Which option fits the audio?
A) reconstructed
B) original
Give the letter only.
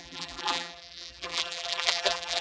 A